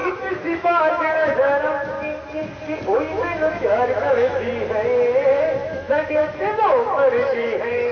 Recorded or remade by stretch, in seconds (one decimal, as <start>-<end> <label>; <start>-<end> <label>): 0.0-1.7 remade; 1.7-3.1 recorded; 3.1-4.5 remade; 4.5-5.6 recorded; 5.6-7.9 remade

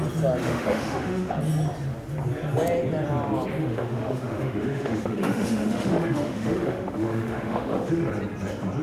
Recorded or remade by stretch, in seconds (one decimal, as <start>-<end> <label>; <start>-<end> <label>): 0.0-0.4 recorded; 0.4-1.3 remade; 1.3-3.6 recorded; 3.6-8.1 remade; 8.1-8.8 recorded

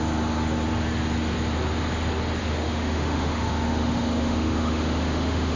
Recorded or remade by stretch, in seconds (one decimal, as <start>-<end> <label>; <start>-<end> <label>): 0.0-2.4 recorded; 2.4-5.6 remade

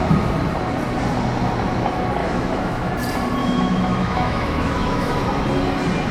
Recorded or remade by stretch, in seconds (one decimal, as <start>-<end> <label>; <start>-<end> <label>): 0.0-2.2 recorded; 2.2-2.9 remade; 2.9-3.4 recorded; 3.4-5.1 remade; 5.1-6.1 recorded

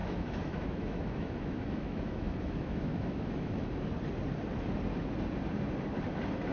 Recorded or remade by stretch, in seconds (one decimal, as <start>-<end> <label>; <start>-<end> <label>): 0.0-3.9 remade; 3.9-6.5 recorded

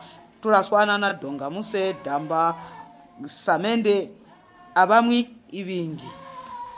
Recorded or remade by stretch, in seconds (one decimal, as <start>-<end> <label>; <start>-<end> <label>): 0.0-1.1 recorded; 1.1-2.5 remade; 2.5-4.7 recorded; 4.7-5.2 remade; 5.2-6.8 recorded

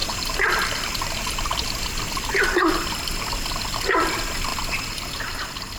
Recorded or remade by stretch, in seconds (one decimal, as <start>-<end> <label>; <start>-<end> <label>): 0.0-5.8 recorded

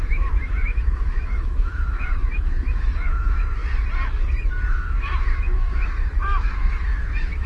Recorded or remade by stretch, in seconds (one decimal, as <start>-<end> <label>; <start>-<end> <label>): 0.0-3.6 remade; 3.6-4.7 recorded; 4.7-7.5 remade